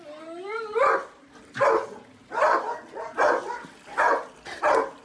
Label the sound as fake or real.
real